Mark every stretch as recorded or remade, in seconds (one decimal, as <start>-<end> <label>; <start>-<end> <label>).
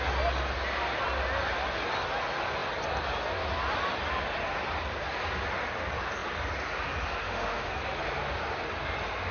0.0-7.2 recorded; 7.2-7.7 remade; 7.7-9.3 recorded